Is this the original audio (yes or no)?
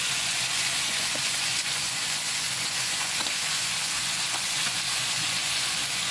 no